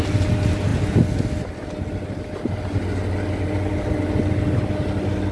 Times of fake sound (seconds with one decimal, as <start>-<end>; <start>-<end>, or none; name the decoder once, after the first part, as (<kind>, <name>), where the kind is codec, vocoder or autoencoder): none